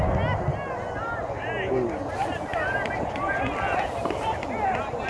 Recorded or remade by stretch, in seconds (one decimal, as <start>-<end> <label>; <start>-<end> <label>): 0.0-5.1 recorded

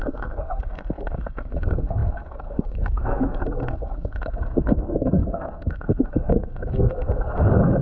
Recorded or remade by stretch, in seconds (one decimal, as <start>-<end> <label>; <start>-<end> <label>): 0.0-7.8 remade

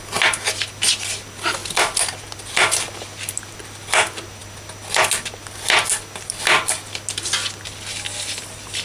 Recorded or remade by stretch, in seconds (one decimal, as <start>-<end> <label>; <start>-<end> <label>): 0.0-8.8 recorded

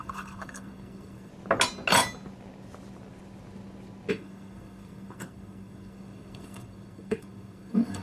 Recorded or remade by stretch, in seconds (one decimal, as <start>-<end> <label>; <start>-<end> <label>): 0.0-1.3 remade; 1.3-4.1 recorded; 4.1-8.0 remade